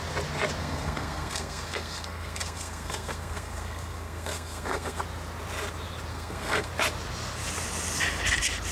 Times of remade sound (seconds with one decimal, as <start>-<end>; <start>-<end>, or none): 0.6-5.0; 6.1-6.7